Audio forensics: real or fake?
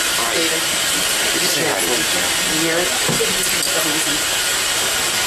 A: real